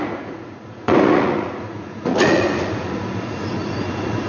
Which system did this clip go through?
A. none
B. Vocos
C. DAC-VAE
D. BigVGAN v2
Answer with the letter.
B